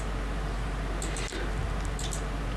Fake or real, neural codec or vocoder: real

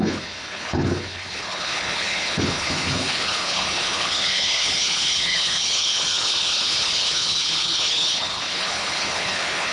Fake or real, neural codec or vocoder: fake, codec, HILCodec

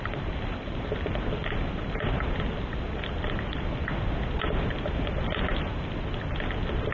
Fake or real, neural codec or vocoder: real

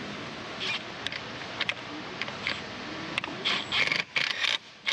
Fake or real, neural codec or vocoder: real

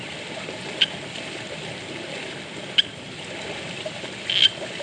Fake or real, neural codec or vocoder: real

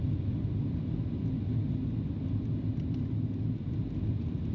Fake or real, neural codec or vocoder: real